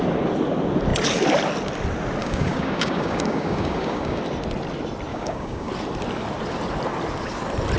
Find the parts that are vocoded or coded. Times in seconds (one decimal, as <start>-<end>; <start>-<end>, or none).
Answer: 2.2-4.2; 5.1-5.7